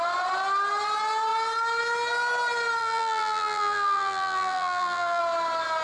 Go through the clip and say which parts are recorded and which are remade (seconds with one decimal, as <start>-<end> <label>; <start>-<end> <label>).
0.0-2.8 recorded; 2.8-5.2 remade; 5.2-5.8 recorded